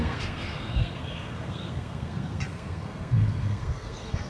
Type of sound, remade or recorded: remade